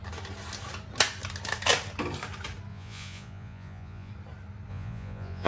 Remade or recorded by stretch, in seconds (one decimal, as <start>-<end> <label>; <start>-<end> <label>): 0.0-2.7 recorded; 2.7-4.1 remade; 4.1-4.7 recorded; 4.7-5.5 remade